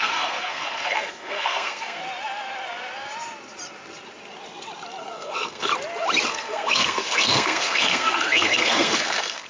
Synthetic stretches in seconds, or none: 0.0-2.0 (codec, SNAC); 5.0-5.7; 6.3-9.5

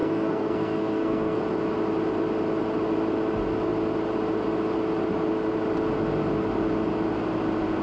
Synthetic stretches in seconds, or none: 0.0-1.4 (codec, SNAC)

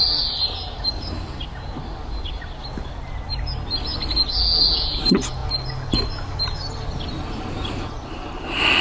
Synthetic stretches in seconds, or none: none

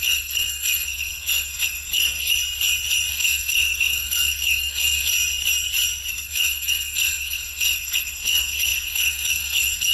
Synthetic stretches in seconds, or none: 0.0-2.3 (codec, SNAC); 3.1-5.1; 6.1-9.9

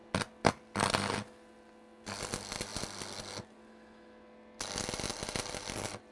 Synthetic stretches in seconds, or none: none